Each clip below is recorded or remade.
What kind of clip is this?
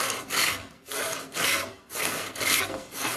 remade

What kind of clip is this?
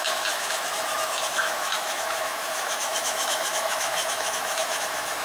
remade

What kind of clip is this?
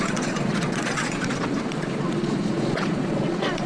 remade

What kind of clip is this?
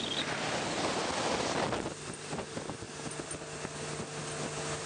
recorded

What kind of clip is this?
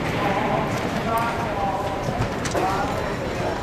remade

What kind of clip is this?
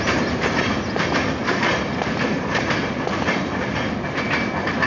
recorded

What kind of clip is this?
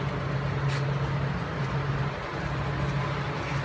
recorded